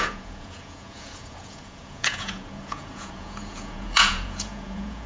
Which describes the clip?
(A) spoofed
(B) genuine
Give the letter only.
A